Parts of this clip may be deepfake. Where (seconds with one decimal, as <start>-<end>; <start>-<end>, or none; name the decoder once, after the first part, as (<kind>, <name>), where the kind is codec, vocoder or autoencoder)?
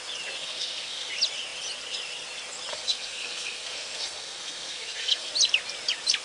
0.4-1.1 (codec, SNAC); 2.7-5.3